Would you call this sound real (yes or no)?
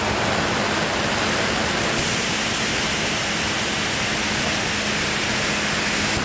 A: yes